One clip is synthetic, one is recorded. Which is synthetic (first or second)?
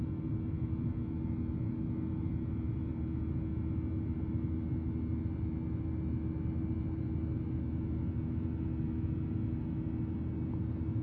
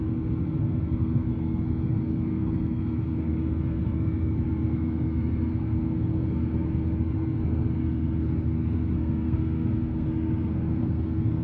second